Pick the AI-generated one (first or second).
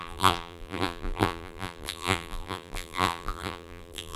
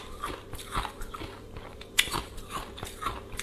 first